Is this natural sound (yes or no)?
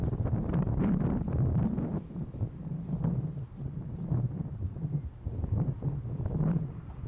no